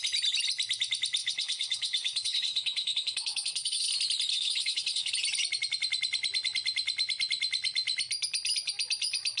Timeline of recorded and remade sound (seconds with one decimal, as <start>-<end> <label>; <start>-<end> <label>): 0.0-1.2 recorded; 1.2-3.9 remade; 3.9-4.3 recorded; 4.3-5.1 remade; 5.1-9.4 recorded